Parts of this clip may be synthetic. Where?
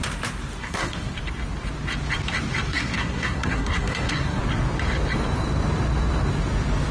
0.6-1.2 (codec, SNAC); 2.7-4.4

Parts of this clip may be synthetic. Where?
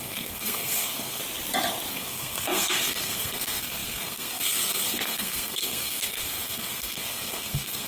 0.0-1.2 (codec, SNAC); 1.9-7.9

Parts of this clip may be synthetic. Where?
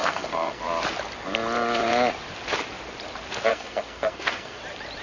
0.0-0.6 (codec, SNAC); 3.5-4.6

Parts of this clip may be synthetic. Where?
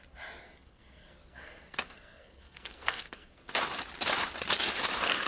0.4-3.6 (codec, SNAC)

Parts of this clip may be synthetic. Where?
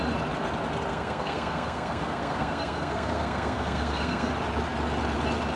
0.9-4.3 (codec, SNAC)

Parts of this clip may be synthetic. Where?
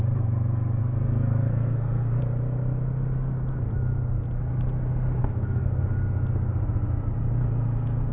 0.8-2.2 (codec, SNAC); 5.2-5.8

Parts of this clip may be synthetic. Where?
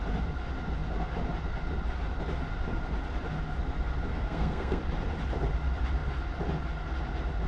4.1-4.8 (codec, SNAC)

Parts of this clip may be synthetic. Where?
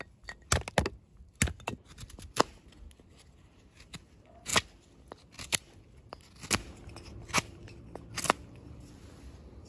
none